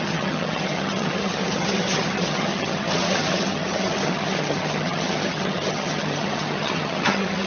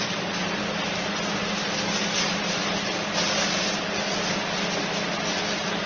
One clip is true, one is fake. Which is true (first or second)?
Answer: second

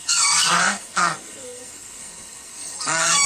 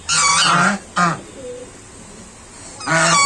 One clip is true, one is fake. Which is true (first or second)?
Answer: second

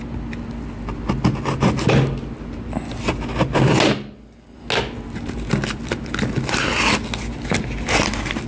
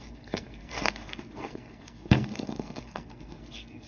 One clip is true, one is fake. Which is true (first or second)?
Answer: first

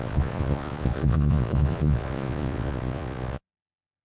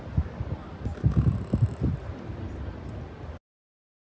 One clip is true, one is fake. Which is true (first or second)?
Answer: second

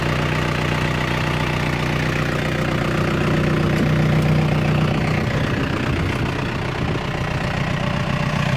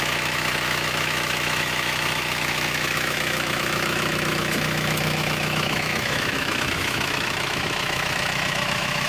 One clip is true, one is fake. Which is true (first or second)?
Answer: first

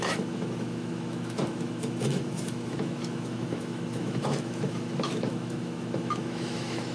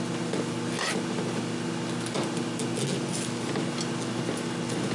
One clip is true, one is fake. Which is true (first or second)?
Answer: second